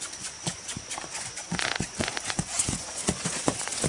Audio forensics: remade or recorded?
remade